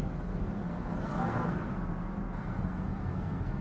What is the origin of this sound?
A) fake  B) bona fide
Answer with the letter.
A